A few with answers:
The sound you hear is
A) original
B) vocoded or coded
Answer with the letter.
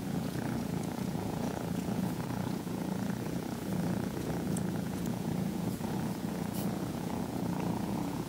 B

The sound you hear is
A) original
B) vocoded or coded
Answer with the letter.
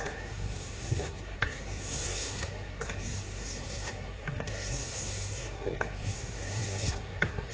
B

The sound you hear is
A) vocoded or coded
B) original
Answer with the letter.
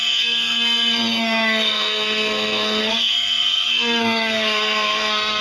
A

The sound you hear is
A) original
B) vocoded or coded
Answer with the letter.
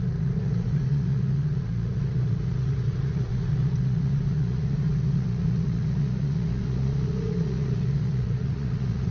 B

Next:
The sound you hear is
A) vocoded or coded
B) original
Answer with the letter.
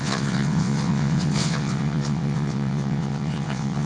A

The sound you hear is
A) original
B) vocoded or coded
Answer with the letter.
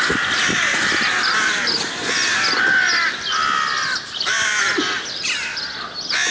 A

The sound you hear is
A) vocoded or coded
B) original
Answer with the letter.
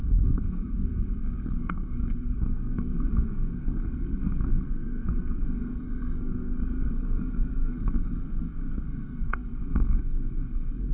A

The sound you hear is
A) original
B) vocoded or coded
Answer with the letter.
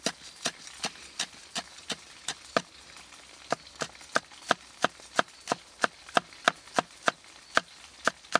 A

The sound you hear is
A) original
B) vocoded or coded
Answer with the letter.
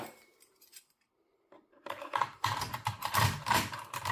B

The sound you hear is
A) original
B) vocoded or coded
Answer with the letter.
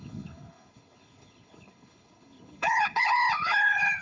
B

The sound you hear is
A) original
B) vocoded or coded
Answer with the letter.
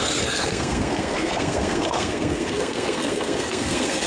B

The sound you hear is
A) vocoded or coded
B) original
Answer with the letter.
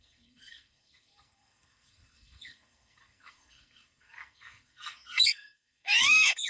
A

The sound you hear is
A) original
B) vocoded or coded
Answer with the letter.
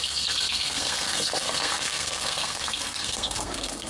B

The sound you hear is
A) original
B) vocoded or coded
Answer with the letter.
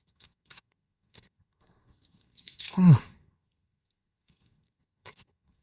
B